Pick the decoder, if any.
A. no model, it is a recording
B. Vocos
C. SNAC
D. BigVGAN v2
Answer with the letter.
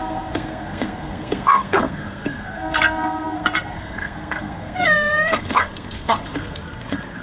C